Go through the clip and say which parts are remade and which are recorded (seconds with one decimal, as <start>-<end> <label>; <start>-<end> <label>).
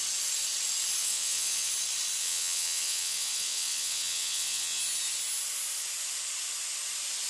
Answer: 0.0-1.0 recorded; 1.0-1.7 remade; 1.7-2.2 recorded; 2.2-4.8 remade; 4.8-7.3 recorded